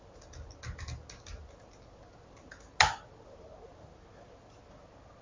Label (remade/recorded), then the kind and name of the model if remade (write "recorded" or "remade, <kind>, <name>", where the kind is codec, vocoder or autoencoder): recorded